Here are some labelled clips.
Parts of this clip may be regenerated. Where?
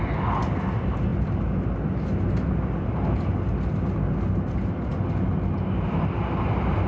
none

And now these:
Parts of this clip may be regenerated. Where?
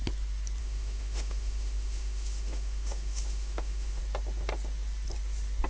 0.6-4.0 (autoencoder, DAC-VAE)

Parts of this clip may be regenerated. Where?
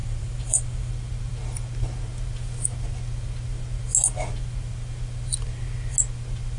0.0-0.9 (vocoder, BigVGAN v2)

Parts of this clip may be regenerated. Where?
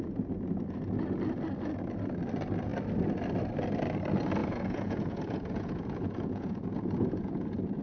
4.4-7.8 (vocoder, Vocos)